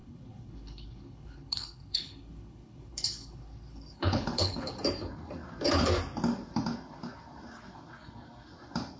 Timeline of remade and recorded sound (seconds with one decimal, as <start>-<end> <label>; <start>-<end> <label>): 0.0-4.7 remade; 4.7-9.0 recorded

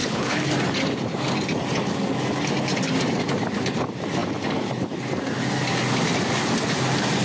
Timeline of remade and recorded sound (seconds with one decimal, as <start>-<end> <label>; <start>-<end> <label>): 0.0-0.5 remade; 0.5-7.2 recorded

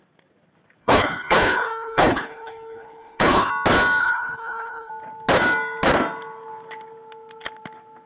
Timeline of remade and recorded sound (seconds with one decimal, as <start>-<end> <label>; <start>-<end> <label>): 0.0-0.8 recorded; 0.8-3.5 remade; 3.5-4.0 recorded; 4.0-4.9 remade; 4.9-8.1 recorded